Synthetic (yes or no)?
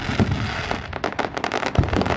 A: no